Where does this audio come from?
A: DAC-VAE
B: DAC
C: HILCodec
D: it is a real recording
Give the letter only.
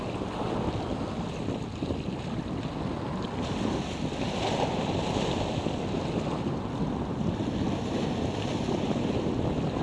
D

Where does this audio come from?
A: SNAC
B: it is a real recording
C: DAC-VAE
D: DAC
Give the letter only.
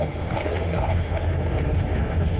C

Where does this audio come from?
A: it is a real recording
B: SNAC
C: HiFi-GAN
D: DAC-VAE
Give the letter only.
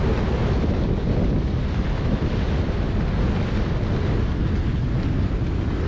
A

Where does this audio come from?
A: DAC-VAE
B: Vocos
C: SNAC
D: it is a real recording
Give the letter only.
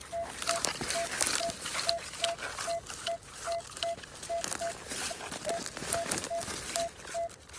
D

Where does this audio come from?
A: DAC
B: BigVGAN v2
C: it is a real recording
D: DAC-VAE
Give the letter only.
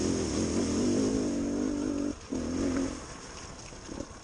C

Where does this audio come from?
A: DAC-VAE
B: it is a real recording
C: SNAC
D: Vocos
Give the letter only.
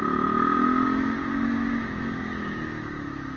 A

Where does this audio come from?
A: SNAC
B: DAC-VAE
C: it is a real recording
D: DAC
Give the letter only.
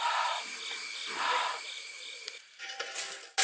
C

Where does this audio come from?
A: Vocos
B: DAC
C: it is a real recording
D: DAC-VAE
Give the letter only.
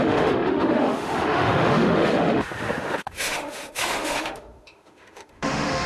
D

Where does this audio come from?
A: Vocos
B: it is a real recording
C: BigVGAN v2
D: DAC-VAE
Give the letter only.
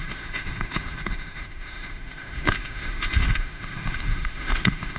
D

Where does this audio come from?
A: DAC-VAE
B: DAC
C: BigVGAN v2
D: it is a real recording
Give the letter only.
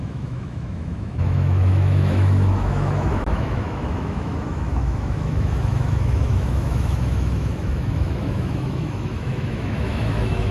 A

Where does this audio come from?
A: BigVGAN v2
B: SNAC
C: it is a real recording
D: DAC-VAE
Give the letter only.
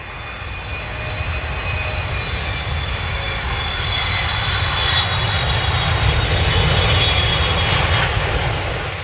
C